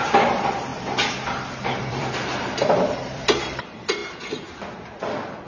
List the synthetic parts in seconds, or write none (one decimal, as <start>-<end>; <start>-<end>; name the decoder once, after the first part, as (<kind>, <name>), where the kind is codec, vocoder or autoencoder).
0.0-0.7 (vocoder, BigVGAN v2); 1.8-4.0